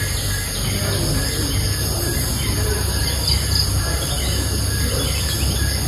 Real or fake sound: real